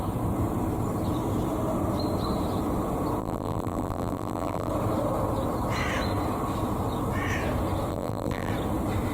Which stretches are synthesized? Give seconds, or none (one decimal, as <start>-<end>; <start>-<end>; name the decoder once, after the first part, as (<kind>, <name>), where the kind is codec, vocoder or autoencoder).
3.2-4.7 (vocoder, BigVGAN v2); 7.9-8.5